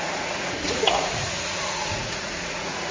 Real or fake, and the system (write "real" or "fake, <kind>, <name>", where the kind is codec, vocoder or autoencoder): fake, vocoder, Vocos